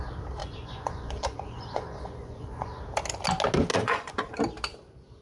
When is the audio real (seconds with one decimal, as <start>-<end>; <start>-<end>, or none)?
0.0-0.4; 2.8-3.7; 4.4-5.2